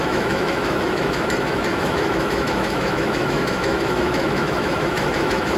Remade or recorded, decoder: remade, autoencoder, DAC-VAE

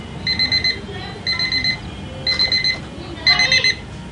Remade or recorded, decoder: recorded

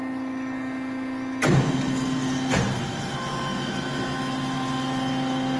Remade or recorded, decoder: recorded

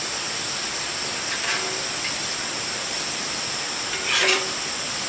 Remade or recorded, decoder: recorded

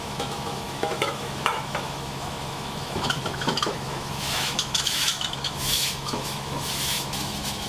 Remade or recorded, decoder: remade, autoencoder, DAC-VAE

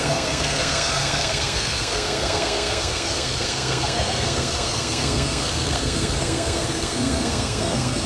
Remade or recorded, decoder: remade, codec, SNAC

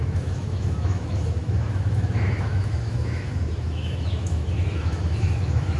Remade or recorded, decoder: remade, autoencoder, DAC-VAE